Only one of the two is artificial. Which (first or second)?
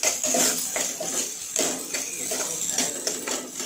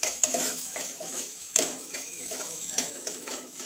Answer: second